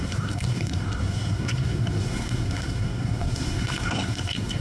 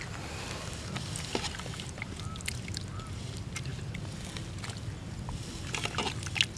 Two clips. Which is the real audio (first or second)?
second